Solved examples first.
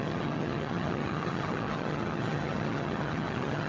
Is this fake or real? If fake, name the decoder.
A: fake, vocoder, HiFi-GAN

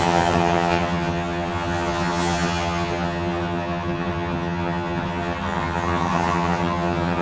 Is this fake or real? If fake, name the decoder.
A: fake, vocoder, HiFi-GAN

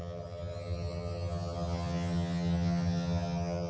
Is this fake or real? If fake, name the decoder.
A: fake, vocoder, HiFi-GAN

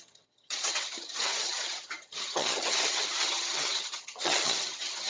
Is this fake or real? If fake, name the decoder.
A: fake, vocoder, HiFi-GAN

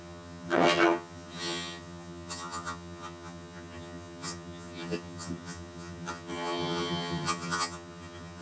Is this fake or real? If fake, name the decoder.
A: fake, vocoder, HiFi-GAN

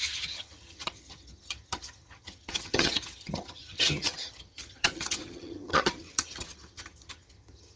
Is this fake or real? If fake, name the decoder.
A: fake, vocoder, HiFi-GAN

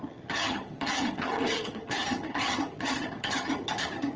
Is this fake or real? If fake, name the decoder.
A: fake, vocoder, HiFi-GAN